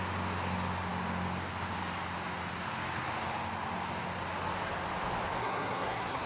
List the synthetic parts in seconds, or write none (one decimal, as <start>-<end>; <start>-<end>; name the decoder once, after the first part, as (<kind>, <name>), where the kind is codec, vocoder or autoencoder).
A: 5.4-6.3 (codec, SNAC)